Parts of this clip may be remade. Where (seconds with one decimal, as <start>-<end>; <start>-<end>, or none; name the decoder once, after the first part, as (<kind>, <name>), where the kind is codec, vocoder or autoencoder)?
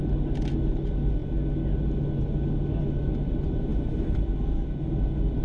none